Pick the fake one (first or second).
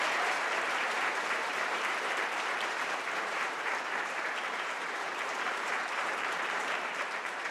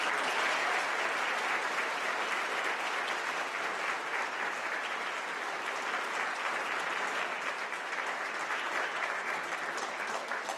first